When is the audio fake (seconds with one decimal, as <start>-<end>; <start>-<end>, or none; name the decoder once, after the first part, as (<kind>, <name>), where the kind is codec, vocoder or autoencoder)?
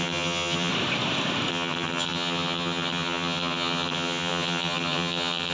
0.0-0.7 (vocoder, HiFi-GAN); 1.5-5.5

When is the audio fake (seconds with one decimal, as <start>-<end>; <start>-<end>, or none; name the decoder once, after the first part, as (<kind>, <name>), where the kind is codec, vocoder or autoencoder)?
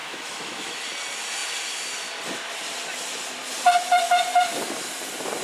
0.0-0.8 (autoencoder, DAC-VAE)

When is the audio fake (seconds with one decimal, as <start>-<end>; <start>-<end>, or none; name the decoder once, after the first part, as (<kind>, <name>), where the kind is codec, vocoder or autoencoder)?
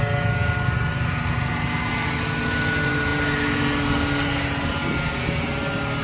none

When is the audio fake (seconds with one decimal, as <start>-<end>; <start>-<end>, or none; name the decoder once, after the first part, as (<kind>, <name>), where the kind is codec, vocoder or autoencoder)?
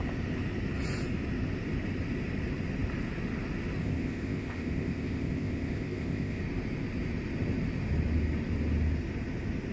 3.8-6.4 (codec, ZipCodec)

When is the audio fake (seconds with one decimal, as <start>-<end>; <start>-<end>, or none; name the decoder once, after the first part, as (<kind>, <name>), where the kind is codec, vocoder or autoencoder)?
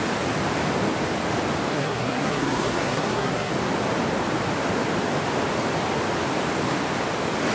1.7-3.5 (codec, SNAC)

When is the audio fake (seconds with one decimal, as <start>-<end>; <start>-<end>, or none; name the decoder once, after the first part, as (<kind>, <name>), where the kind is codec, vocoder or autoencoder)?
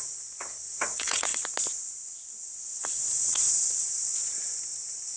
0.9-1.4 (vocoder, Vocos); 2.8-3.9